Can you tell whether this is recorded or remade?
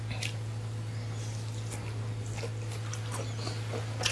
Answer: recorded